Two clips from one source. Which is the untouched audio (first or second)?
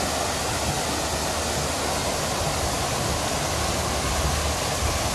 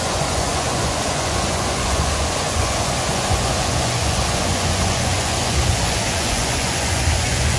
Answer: first